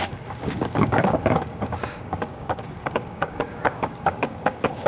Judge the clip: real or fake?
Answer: fake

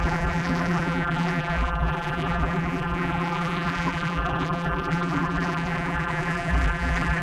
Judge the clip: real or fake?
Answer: fake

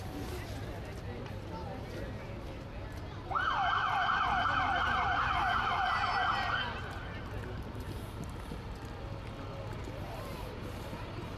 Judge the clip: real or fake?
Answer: real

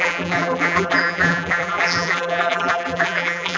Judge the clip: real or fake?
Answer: fake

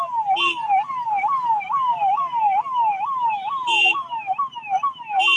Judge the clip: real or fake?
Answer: real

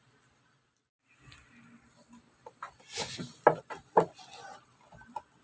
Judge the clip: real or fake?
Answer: real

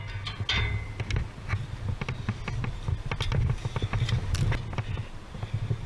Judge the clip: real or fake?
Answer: real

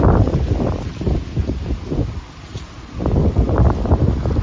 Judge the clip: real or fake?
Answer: real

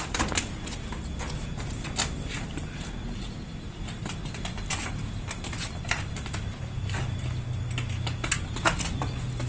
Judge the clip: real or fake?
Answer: real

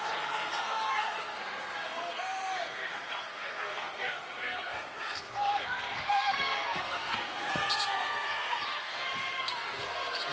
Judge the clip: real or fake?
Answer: fake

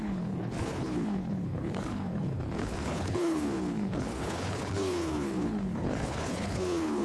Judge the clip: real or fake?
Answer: fake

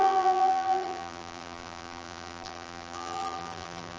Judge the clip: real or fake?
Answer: fake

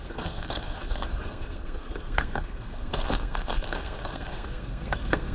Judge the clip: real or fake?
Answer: fake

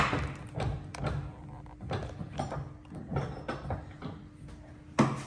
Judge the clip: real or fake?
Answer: real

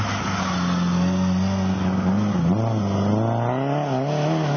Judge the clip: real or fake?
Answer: real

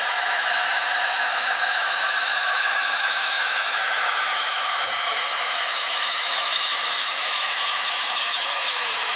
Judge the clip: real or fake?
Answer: fake